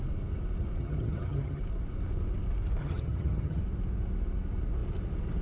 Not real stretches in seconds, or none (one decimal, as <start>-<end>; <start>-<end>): 0.8-1.6; 2.8-3.6